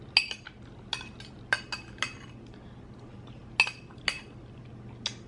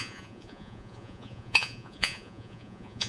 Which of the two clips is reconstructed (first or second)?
second